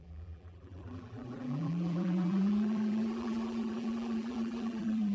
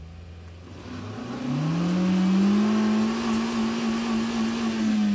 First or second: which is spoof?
first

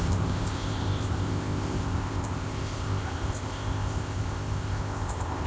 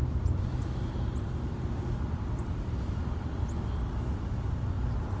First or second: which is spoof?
first